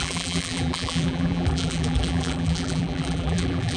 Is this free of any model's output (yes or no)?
no